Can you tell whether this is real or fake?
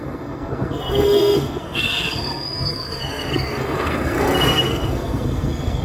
fake